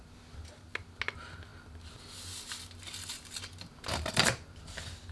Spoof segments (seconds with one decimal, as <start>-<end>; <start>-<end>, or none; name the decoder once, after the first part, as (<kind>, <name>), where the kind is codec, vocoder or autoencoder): none